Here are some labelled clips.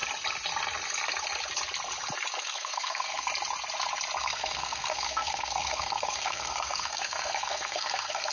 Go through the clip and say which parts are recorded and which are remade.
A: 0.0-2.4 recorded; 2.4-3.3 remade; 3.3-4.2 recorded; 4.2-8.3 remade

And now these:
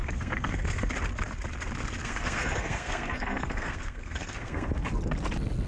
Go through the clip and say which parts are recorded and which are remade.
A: 0.0-0.9 remade; 0.9-2.0 recorded; 2.0-4.7 remade; 4.7-5.7 recorded

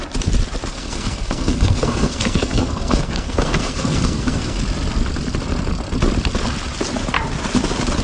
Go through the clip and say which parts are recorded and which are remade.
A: 0.0-0.7 recorded; 0.7-4.6 remade; 4.6-8.0 recorded